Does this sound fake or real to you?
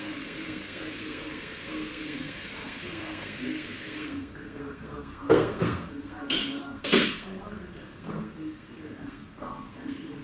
fake